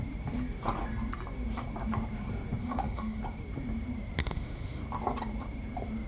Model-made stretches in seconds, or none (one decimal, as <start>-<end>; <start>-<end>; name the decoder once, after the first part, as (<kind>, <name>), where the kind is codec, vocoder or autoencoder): 2.6-3.2 (autoencoder, DAC-VAE); 4.2-4.8